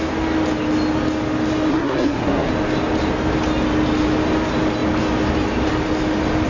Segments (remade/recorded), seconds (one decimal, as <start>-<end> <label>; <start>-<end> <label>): 0.0-1.7 recorded; 1.7-2.5 remade; 2.5-6.5 recorded